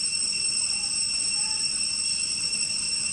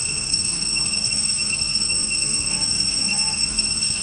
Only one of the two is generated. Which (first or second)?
second